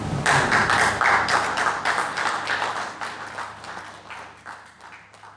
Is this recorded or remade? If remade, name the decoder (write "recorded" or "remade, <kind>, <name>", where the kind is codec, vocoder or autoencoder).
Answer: recorded